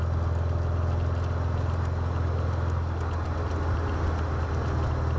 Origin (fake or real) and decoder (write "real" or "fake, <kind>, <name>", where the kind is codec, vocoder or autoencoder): real